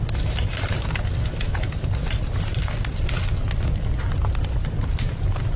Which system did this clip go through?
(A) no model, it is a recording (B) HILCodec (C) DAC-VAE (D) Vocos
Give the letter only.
A